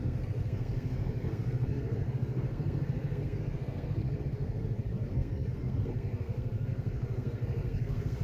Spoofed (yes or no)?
yes